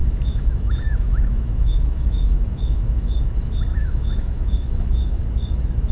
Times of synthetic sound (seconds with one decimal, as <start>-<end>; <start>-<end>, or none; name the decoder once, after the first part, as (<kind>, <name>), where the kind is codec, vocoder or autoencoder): 0.0-3.2 (autoencoder, DAC-VAE); 3.7-5.2